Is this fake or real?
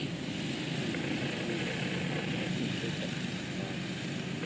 real